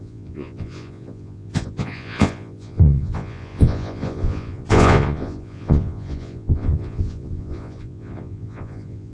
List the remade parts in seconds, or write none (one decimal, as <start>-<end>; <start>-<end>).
0.0-9.1